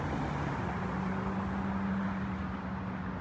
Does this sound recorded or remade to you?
recorded